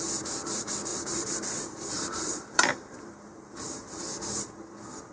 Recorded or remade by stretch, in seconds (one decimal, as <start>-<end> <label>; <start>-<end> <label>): 0.0-0.9 recorded; 0.9-4.0 remade; 4.0-5.1 recorded